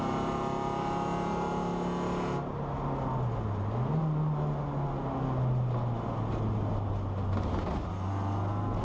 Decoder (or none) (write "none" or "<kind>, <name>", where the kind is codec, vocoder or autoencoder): none